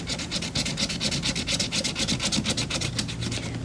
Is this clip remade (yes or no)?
no